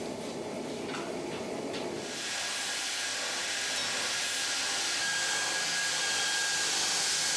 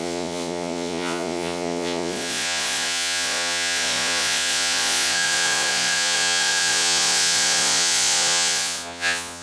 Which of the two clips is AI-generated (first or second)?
second